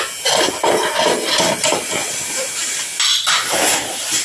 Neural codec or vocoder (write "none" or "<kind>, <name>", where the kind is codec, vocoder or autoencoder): none